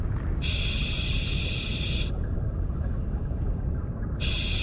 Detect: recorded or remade recorded